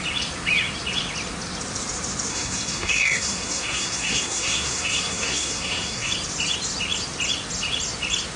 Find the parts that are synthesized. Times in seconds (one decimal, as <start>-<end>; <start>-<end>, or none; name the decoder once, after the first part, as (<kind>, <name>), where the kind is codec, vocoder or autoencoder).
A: 2.3-6.1 (codec, SNAC)